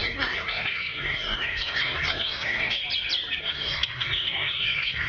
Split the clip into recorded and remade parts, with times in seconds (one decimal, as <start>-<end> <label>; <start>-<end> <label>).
0.0-2.8 remade; 2.8-3.4 recorded; 3.4-5.1 remade